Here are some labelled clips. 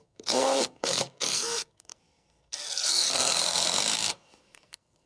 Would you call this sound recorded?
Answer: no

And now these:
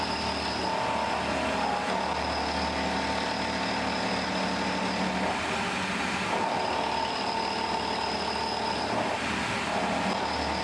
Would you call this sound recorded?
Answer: yes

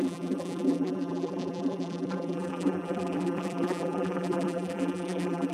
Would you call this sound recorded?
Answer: no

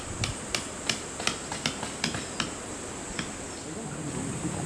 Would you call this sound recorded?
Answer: yes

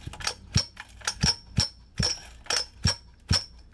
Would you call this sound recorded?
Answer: yes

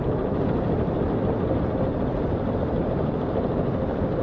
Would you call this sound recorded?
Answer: yes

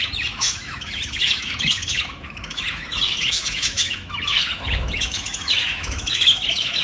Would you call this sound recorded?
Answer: no